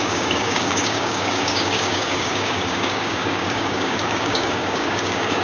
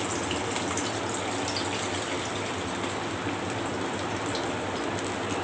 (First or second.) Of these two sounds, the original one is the second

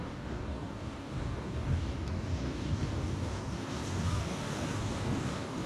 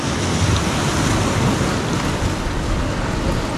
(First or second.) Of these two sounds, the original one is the second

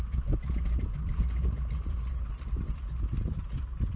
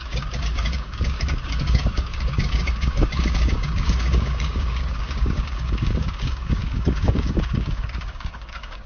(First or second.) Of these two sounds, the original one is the first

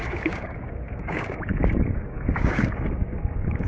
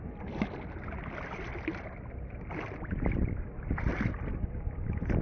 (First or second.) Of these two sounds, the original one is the second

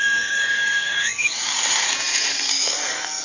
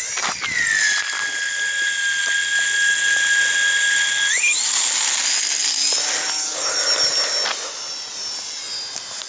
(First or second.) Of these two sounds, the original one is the second